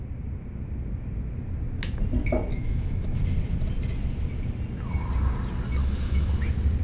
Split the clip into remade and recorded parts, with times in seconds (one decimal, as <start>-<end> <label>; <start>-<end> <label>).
0.0-2.5 recorded; 2.5-3.2 remade; 3.2-5.8 recorded; 5.8-6.3 remade; 6.3-6.8 recorded